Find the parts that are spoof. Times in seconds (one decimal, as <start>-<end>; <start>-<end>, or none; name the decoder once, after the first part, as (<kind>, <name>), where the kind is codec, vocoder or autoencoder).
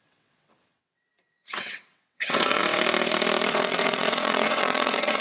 0.0-2.6 (vocoder, WaveNeXt); 3.5-5.2